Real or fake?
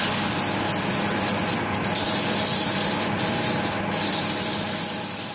real